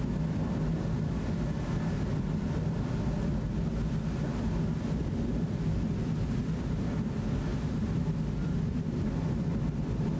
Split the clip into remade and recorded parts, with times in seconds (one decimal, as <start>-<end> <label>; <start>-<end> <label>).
0.0-7.5 recorded; 7.5-9.5 remade; 9.5-10.2 recorded